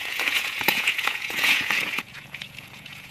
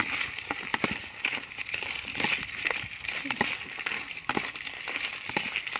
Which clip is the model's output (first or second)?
first